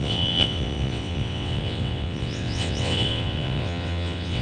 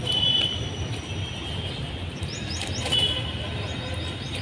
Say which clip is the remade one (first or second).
first